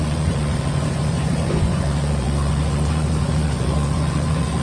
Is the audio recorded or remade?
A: remade